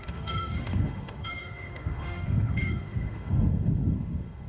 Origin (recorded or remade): remade